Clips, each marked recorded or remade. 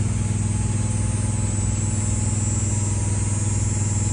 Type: recorded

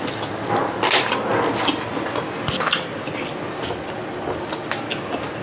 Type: recorded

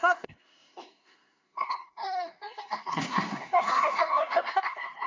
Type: remade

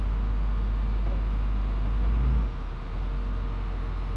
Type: recorded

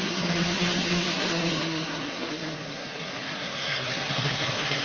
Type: remade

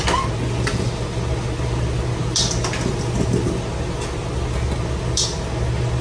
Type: recorded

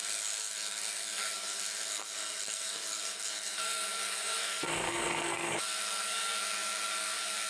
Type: remade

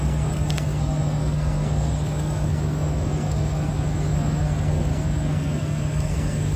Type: remade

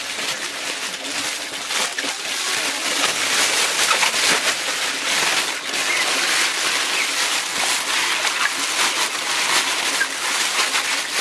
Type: recorded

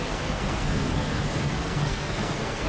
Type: remade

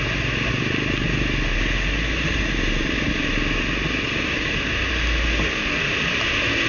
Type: recorded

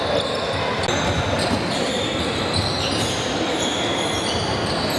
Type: recorded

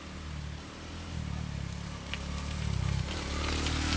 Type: recorded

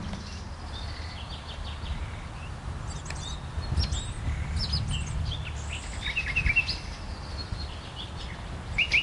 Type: recorded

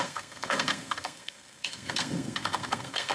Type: remade